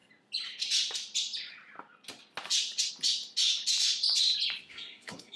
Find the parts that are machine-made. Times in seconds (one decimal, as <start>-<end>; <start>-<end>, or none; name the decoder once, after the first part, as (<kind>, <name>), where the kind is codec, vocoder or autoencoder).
4.7-5.4 (codec, SNAC)